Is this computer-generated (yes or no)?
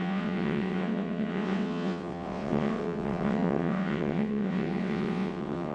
yes